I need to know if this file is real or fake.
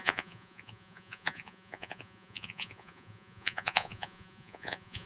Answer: fake